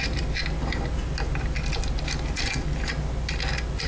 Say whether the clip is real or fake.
real